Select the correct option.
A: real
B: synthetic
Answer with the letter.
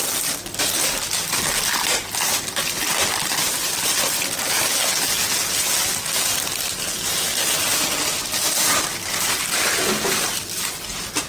A